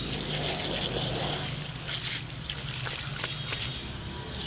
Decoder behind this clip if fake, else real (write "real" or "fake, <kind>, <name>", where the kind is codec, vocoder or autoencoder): real